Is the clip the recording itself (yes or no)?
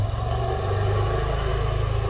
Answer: yes